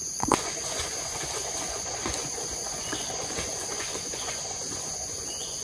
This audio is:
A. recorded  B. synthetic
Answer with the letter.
B